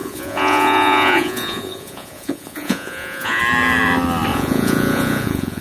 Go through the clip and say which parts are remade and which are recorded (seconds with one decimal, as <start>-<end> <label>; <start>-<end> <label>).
0.0-3.4 remade; 3.4-4.3 recorded; 4.3-5.6 remade